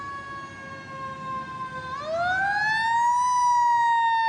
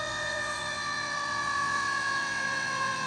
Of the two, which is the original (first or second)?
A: first